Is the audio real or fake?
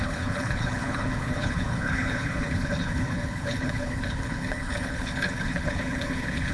fake